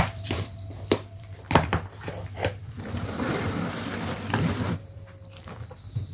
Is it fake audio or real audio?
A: fake